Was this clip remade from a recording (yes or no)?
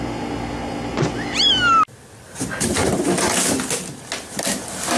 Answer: no